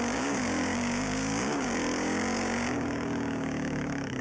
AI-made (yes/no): yes